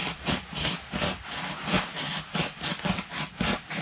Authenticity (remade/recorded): recorded